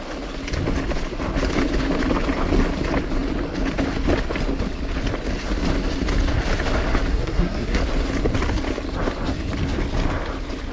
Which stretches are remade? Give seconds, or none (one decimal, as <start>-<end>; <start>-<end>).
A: 7.1-7.8